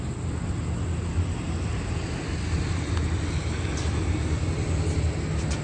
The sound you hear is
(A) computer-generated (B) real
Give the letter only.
B